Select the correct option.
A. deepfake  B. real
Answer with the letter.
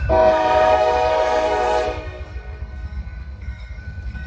A